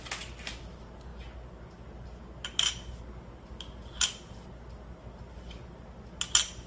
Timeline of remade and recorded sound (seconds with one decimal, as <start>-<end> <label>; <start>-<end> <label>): 0.0-6.7 recorded

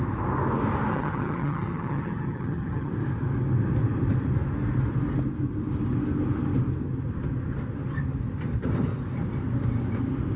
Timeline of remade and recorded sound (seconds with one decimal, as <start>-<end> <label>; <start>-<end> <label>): 0.0-0.9 recorded; 0.9-2.9 remade; 2.9-10.4 recorded

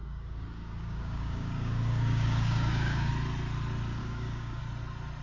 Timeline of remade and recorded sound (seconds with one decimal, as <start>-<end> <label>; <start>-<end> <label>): 0.0-3.1 remade; 3.1-4.0 recorded; 4.0-4.6 remade; 4.6-5.2 recorded